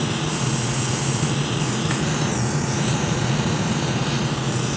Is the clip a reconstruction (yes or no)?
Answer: yes